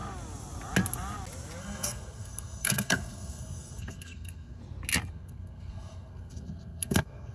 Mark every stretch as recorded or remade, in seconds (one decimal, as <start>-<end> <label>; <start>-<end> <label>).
0.0-1.6 recorded; 1.6-4.6 remade; 4.6-5.1 recorded; 5.1-7.3 remade